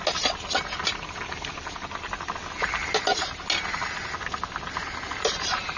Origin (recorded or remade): recorded